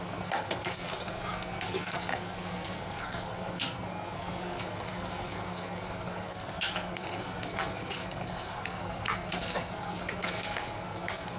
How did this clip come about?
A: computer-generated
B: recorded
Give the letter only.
A